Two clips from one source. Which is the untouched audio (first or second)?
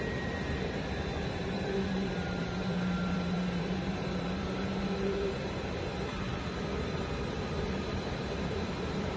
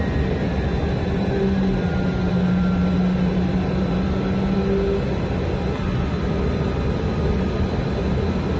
second